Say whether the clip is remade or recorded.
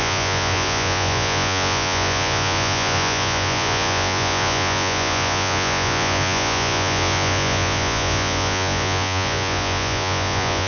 remade